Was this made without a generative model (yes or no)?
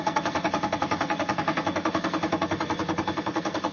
no